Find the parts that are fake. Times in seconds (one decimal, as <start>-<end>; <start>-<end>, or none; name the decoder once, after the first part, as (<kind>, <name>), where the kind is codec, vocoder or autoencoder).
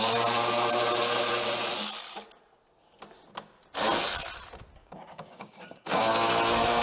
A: 4.8-6.3 (codec, DAC)